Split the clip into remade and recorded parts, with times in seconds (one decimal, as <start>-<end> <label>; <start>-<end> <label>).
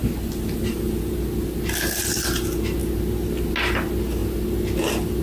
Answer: 0.0-5.2 recorded